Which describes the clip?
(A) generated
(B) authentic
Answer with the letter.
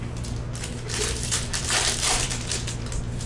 B